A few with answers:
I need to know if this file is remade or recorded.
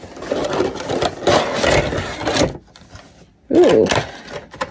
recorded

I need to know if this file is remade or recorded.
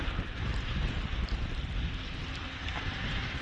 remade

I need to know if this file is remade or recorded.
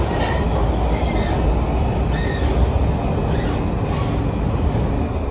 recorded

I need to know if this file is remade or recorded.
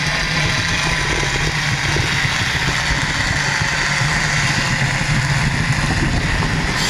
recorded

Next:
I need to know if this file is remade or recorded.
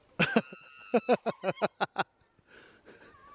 recorded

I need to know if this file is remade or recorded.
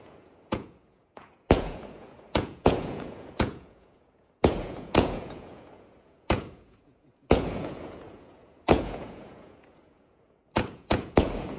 remade